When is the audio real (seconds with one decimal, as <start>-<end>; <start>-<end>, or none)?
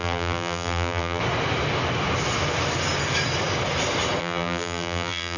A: 1.2-4.2